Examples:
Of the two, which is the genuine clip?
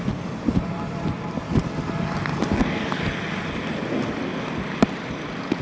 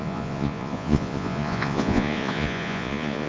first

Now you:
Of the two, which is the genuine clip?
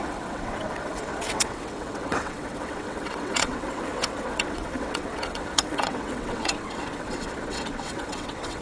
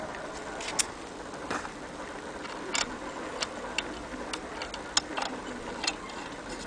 second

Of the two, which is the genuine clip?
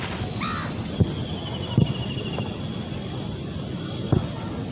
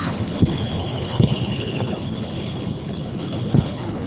first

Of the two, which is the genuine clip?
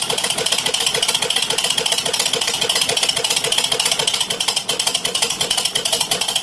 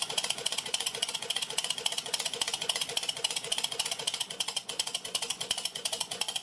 first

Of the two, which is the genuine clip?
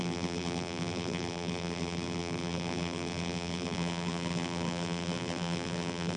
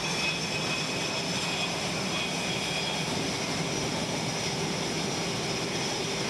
second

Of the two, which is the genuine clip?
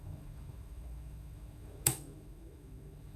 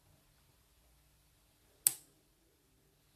second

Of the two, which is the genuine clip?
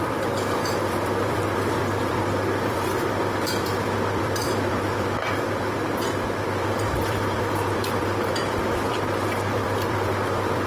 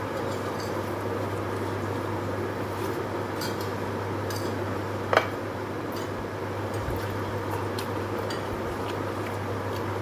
second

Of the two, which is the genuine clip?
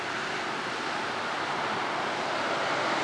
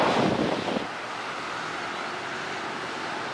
second